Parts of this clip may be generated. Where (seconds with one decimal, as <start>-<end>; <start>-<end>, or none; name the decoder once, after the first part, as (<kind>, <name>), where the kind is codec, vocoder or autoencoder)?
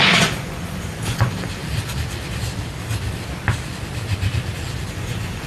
0.0-1.6 (vocoder, Vocos); 4.9-5.5